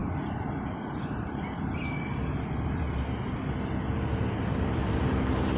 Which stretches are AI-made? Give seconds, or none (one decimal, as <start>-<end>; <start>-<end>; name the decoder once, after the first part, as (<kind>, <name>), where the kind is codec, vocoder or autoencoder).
none